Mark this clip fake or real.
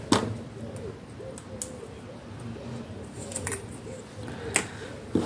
real